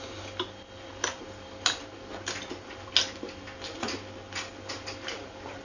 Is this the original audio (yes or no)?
yes